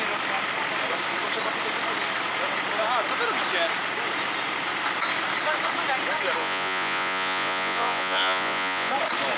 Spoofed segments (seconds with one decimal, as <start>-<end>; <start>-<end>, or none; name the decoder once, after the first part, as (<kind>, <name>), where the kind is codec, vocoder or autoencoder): 6.4-8.9 (vocoder, Vocos)